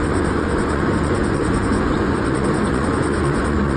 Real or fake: fake